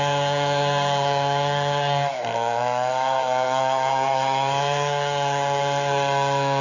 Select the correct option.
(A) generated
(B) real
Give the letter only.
A